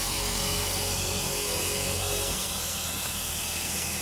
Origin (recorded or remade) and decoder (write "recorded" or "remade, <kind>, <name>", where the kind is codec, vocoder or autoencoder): remade, codec, SNAC